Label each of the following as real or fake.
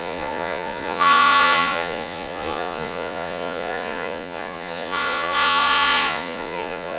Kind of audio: fake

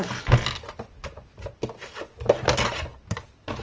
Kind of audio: real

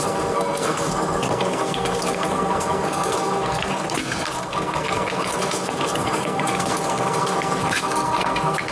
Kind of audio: fake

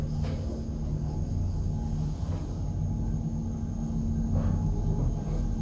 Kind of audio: real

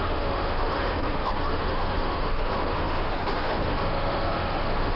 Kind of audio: fake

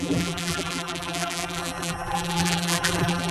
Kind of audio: fake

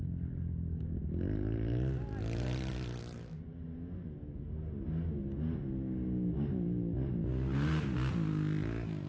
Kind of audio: real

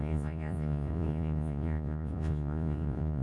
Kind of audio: fake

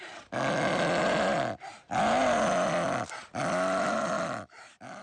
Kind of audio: real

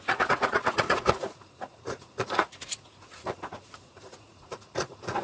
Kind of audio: fake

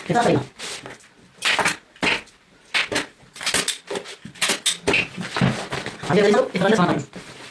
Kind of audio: real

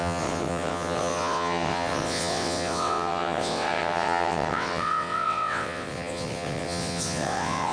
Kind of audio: fake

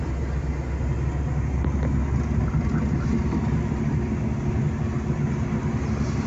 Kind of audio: real